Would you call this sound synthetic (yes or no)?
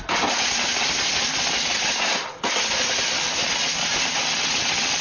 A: no